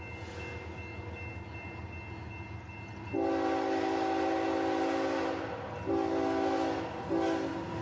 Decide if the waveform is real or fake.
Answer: real